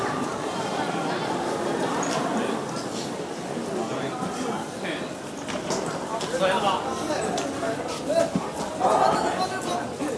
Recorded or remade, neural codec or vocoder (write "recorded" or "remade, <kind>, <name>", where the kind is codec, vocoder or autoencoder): recorded